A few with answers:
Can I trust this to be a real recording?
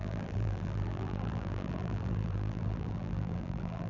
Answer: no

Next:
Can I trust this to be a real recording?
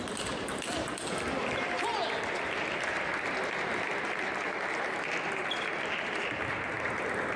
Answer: yes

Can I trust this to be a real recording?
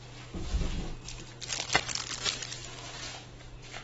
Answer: yes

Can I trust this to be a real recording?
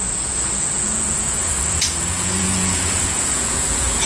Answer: no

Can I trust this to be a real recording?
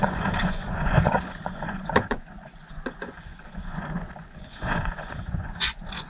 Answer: no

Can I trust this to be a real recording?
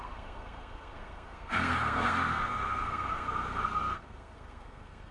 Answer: no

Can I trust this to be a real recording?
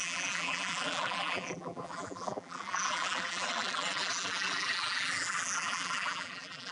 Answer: no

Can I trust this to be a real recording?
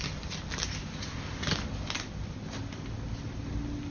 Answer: yes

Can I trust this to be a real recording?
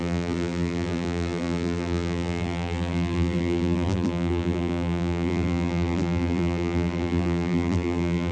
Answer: no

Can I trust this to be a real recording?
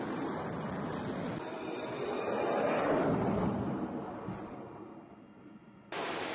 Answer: no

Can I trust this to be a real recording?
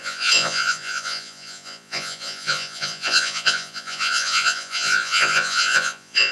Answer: no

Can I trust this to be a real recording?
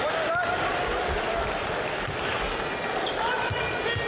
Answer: yes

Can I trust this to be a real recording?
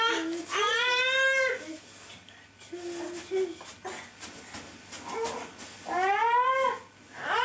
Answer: yes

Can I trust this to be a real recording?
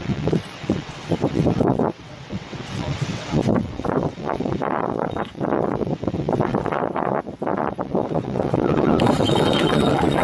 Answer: no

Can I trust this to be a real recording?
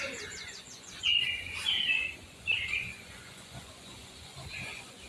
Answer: no